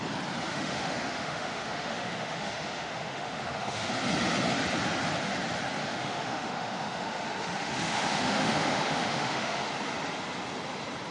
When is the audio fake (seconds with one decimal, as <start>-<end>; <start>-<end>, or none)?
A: 0.5-3.9; 5.8-9.7